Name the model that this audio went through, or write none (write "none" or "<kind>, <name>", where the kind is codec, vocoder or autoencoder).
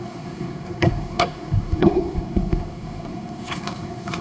codec, SNAC